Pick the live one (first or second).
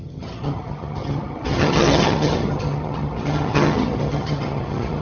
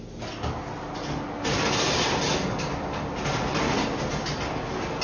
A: second